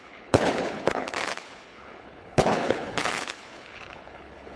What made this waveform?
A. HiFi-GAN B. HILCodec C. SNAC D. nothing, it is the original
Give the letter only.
B